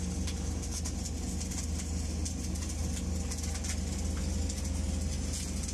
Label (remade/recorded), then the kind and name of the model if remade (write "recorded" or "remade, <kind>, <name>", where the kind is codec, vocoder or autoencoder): recorded